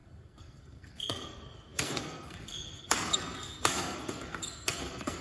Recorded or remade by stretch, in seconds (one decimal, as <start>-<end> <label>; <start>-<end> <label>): 0.0-5.2 remade